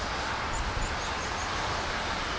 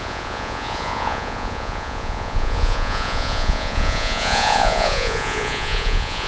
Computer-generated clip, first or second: second